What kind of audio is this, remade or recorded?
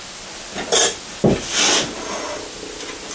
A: recorded